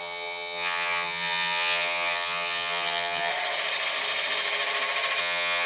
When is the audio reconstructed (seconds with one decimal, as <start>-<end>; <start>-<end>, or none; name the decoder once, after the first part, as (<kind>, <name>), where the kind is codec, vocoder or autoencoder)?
0.0-3.3 (vocoder, HiFi-GAN); 5.2-5.7